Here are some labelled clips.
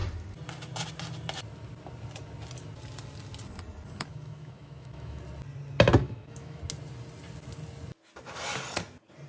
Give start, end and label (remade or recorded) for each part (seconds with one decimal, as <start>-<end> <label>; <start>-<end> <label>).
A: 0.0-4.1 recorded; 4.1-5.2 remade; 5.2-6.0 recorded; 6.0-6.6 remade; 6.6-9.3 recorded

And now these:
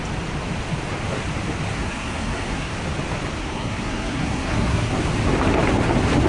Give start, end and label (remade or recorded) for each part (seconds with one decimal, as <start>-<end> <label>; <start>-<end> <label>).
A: 0.0-1.8 recorded; 1.8-2.7 remade; 2.7-3.4 recorded; 3.4-4.9 remade; 4.9-6.3 recorded

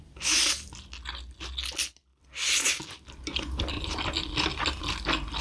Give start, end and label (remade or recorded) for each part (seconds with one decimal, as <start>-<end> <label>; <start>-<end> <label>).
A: 0.0-5.4 recorded

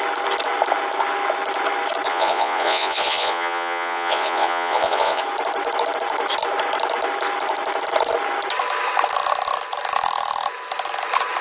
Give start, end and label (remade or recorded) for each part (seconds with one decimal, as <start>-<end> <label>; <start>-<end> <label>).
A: 0.0-2.1 recorded; 2.1-5.2 remade; 5.2-11.4 recorded

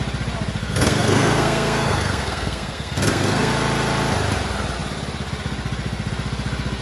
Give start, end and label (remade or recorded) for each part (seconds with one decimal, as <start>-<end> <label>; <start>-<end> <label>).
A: 0.0-0.6 recorded; 0.6-3.5 remade; 3.5-6.8 recorded